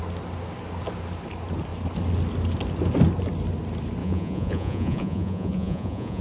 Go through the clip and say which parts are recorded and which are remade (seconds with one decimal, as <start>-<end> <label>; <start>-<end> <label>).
0.0-4.0 recorded; 4.0-6.2 remade